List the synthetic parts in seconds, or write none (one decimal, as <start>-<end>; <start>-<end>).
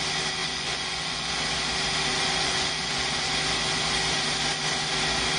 0.4-1.3; 2.1-3.3